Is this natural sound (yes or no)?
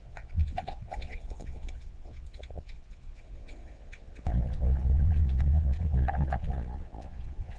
no